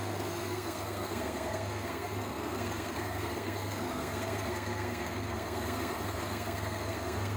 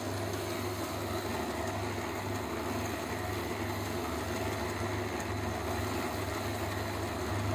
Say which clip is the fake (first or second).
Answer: first